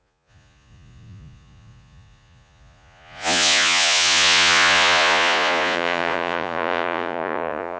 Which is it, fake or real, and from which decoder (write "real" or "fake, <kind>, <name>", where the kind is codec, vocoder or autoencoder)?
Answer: fake, vocoder, Vocos